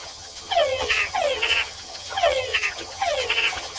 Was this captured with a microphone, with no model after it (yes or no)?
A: no